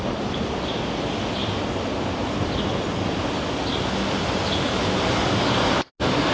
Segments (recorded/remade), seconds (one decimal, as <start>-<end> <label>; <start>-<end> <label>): 0.0-6.3 recorded